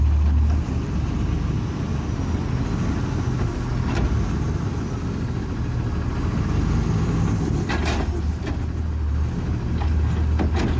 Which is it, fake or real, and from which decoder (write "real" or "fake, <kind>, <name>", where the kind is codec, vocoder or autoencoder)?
real